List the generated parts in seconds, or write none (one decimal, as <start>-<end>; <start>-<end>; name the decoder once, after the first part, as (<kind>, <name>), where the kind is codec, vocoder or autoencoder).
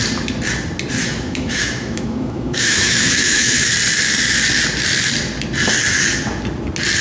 1.0-3.7 (autoencoder, DAC-VAE)